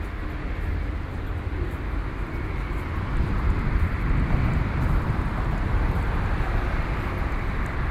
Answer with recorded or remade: recorded